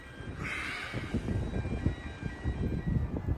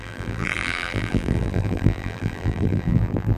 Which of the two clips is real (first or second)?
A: first